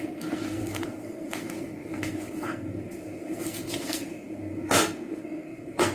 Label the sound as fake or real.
fake